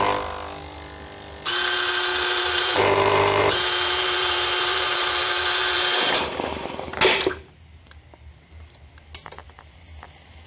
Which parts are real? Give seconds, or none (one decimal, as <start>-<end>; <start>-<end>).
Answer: 0.0-2.1; 6.3-10.5